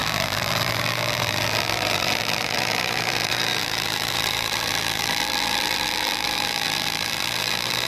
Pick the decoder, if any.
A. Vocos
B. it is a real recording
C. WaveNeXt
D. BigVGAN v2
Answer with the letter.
D